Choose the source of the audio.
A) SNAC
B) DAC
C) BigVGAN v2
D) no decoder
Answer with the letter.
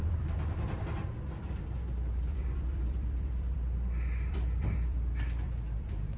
C